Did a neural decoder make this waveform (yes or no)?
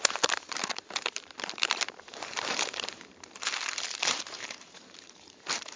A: yes